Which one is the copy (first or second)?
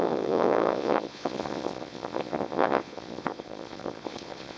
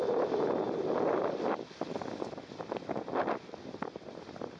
first